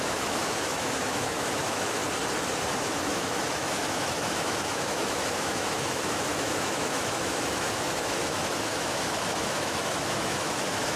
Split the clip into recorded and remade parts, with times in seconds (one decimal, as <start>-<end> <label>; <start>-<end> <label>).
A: 0.0-2.0 remade; 2.0-2.8 recorded; 2.8-11.0 remade